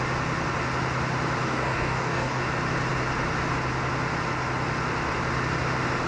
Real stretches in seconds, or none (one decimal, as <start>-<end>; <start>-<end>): 0.0-1.4; 2.4-6.1